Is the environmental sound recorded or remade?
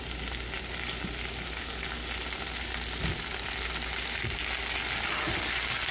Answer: recorded